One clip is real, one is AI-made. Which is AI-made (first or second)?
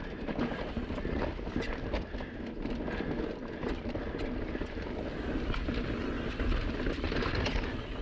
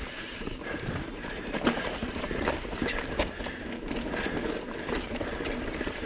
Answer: second